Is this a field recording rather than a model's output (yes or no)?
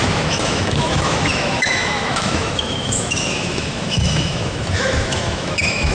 no